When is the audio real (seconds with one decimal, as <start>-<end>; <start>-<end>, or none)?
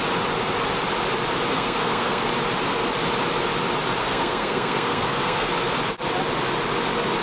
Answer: 0.0-1.5; 2.3-4.0; 5.5-7.2